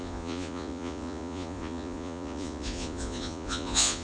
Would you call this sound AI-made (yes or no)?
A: yes